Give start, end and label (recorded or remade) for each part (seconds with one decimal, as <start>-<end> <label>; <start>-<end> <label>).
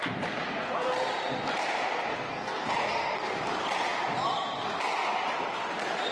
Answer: 0.0-2.1 recorded; 2.1-3.4 remade; 3.4-6.1 recorded